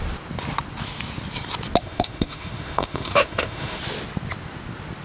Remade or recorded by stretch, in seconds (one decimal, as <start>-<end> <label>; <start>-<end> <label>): 0.0-1.8 recorded; 1.8-3.8 remade; 3.8-5.0 recorded